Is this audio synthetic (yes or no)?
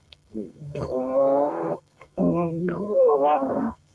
yes